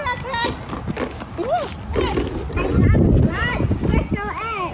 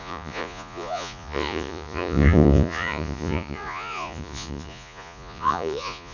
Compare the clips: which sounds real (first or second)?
first